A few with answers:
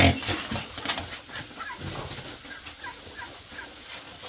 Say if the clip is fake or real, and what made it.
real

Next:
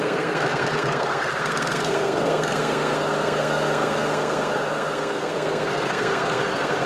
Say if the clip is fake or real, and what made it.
fake, codec, SNAC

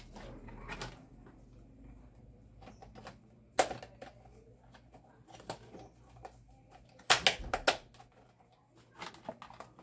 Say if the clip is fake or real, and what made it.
real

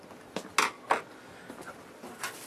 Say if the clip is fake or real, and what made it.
real